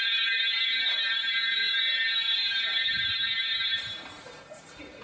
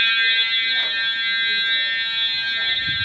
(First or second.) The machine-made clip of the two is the first